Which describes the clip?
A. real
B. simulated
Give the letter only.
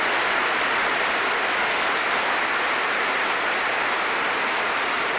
A